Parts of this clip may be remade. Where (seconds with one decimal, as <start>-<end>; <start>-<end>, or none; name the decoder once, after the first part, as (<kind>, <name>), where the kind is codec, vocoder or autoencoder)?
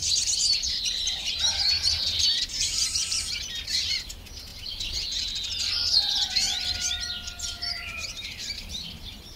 0.0-1.4 (vocoder, BigVGAN v2); 7.6-8.9